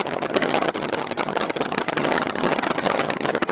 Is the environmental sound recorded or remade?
remade